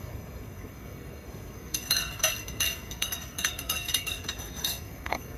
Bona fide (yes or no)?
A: no